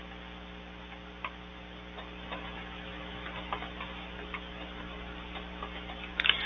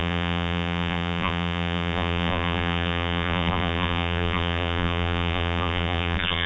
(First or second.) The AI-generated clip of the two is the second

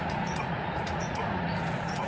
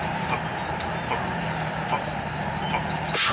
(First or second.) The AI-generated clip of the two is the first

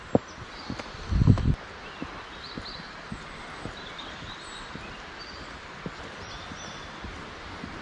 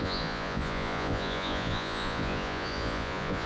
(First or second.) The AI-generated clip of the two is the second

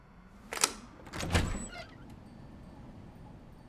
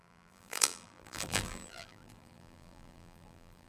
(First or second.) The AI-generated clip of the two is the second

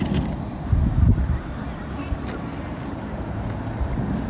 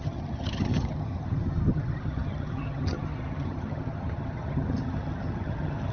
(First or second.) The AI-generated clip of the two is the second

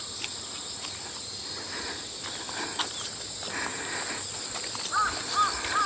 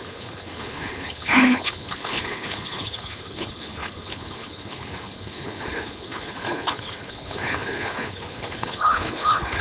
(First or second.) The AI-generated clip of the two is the second